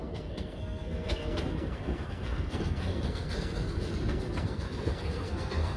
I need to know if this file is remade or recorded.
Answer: remade